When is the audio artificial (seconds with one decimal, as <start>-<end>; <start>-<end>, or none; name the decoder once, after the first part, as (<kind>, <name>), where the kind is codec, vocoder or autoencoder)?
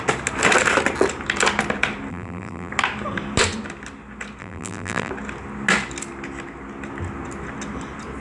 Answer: 2.1-2.7 (vocoder, BigVGAN v2); 4.4-5.1